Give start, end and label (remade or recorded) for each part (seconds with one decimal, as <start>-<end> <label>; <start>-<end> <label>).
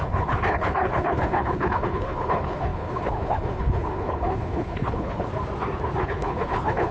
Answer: 0.0-5.3 remade; 5.3-6.0 recorded; 6.0-6.9 remade